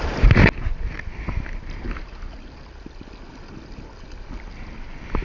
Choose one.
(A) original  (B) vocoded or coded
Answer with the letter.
A